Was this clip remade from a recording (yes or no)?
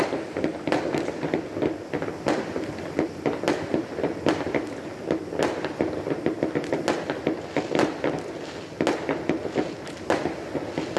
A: no